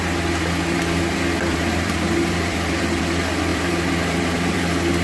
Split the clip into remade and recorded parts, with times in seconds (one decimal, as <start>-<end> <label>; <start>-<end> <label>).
0.0-1.5 recorded; 1.5-3.0 remade; 3.0-3.5 recorded; 3.5-4.6 remade; 4.6-5.0 recorded